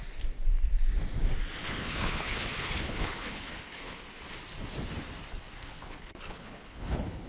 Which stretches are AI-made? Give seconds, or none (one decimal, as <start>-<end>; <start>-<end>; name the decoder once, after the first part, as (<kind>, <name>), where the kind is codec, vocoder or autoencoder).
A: 1.6-4.0 (codec, HILCodec); 5.6-7.3